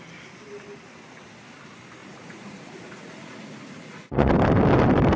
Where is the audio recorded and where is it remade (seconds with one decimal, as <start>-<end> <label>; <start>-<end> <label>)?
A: 0.0-2.0 recorded; 2.0-4.3 remade; 4.3-5.2 recorded